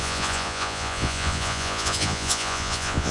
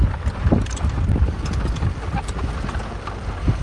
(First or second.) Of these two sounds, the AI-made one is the first